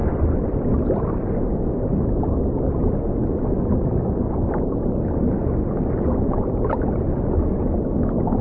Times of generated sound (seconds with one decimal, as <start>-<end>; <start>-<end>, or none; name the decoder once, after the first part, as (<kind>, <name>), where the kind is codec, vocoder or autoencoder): 0.0-0.6 (vocoder, BigVGAN v2)

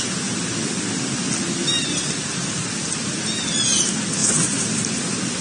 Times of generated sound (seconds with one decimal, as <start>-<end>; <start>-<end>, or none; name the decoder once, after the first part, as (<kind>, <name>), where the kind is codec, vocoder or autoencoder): none

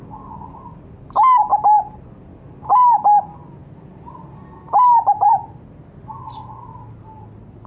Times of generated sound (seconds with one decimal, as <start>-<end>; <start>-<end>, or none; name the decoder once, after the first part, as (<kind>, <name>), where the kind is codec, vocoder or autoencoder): 1.5-2.5 (vocoder, BigVGAN v2); 3.6-6.1

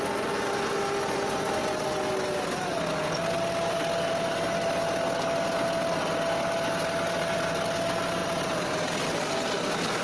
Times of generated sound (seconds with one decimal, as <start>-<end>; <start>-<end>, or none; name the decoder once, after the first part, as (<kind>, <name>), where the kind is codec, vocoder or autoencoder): 8.2-9.3 (vocoder, BigVGAN v2)

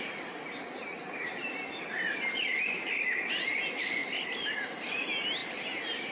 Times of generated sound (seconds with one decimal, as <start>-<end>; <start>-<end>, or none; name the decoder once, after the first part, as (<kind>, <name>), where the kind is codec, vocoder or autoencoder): 2.5-3.6 (vocoder, BigVGAN v2); 4.0-4.8; 5.4-6.1